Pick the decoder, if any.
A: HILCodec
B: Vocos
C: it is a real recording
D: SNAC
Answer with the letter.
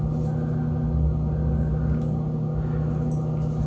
C